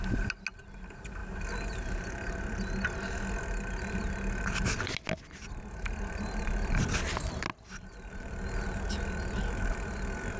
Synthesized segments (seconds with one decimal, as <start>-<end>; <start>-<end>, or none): none